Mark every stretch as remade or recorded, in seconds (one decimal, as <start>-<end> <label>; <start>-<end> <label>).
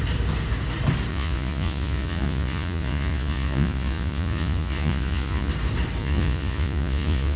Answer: 0.0-1.1 recorded; 1.1-5.5 remade; 5.5-6.0 recorded; 6.0-7.4 remade